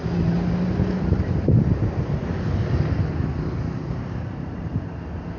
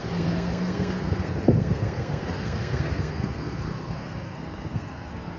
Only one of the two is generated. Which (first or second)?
second